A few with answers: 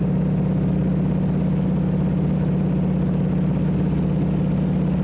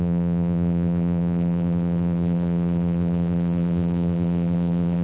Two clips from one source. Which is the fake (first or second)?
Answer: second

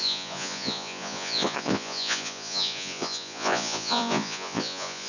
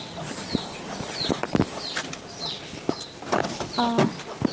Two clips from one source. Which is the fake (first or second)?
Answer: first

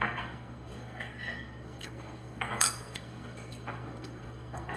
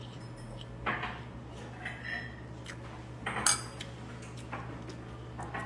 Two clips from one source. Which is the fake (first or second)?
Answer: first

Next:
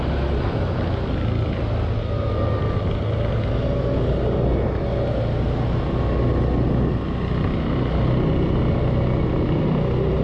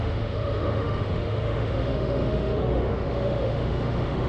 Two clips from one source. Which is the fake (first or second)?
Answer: second